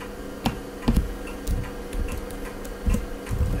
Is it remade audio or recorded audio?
recorded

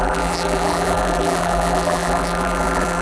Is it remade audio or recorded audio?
remade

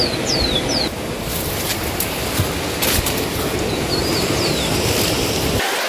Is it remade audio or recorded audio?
recorded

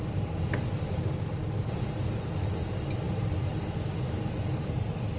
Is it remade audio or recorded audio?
remade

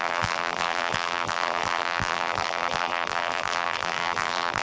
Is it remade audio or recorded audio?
remade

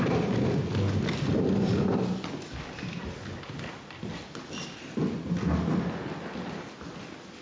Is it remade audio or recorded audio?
recorded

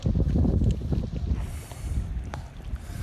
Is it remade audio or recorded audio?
recorded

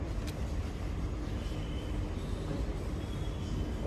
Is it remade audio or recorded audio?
recorded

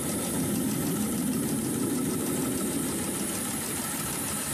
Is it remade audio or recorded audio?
remade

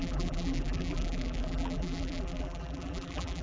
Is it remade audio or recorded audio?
remade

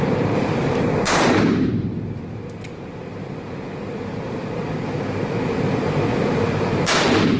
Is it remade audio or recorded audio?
remade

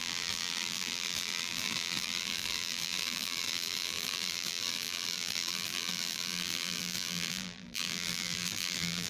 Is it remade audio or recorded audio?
remade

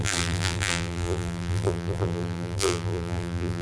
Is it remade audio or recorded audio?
remade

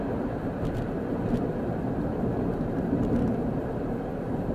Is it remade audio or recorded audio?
remade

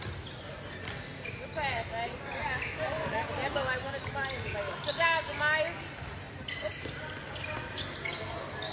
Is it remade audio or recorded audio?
recorded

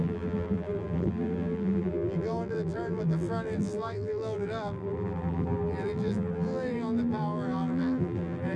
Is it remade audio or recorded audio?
remade